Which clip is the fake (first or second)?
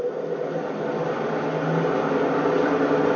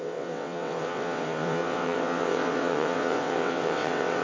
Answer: second